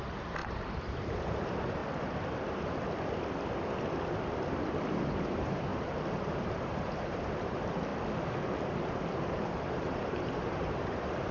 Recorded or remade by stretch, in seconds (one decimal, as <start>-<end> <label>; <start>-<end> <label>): 0.0-1.8 remade; 1.8-4.6 recorded; 4.6-5.7 remade; 5.7-6.2 recorded; 6.2-7.9 remade; 7.9-8.9 recorded; 8.9-11.3 remade